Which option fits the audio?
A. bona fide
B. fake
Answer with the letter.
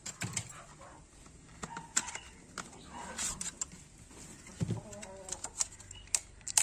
A